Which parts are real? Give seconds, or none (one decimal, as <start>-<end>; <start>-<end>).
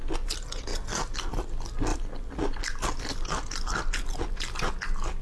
0.0-1.9; 4.3-5.2